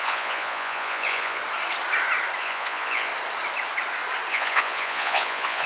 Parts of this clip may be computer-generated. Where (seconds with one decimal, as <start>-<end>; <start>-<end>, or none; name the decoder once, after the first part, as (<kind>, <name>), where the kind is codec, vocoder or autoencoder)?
0.0-1.4 (vocoder, Vocos); 2.4-3.1; 4.3-5.7